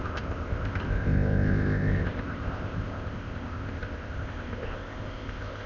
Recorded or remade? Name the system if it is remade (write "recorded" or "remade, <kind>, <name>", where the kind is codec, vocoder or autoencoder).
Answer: remade, codec, ZipCodec